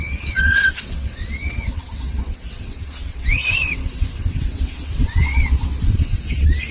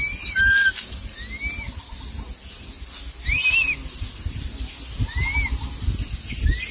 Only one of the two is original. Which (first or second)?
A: second